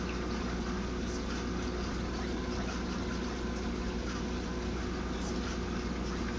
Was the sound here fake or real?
real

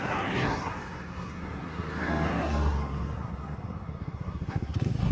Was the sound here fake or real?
fake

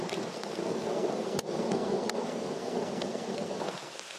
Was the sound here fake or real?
fake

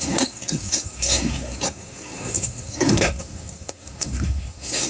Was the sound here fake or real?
fake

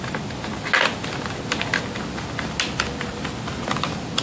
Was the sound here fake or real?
real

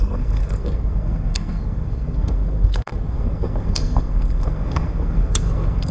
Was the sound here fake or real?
fake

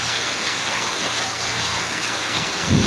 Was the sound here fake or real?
fake